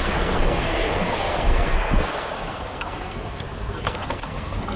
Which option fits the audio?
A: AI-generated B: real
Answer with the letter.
A